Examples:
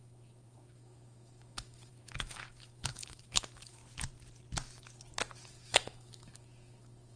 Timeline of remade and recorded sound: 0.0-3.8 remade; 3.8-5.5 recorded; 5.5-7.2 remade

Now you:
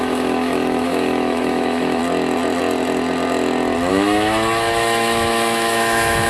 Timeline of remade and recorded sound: 0.0-2.0 remade; 2.0-3.9 recorded; 3.9-6.3 remade

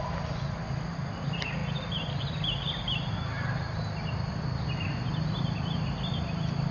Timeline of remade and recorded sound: 0.0-6.7 recorded

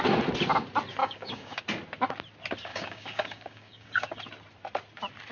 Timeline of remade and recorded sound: 0.0-1.0 recorded; 1.0-1.6 remade; 1.6-2.7 recorded; 2.7-4.2 remade; 4.2-5.3 recorded

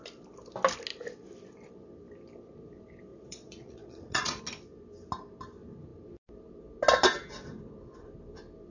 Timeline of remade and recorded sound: 0.0-3.1 recorded; 3.1-4.4 remade; 4.4-8.7 recorded

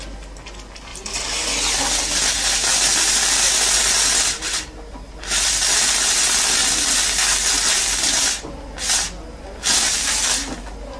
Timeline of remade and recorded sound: 0.0-0.9 recorded; 0.9-2.0 remade; 2.0-2.7 recorded; 2.7-3.8 remade; 3.8-11.0 recorded

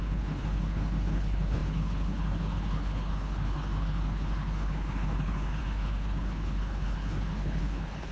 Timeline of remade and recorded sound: 0.0-8.1 remade

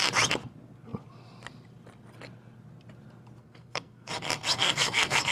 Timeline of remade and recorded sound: 0.0-3.4 recorded; 3.4-4.1 remade; 4.1-4.5 recorded; 4.5-5.3 remade